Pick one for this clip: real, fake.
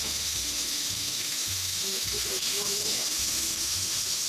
fake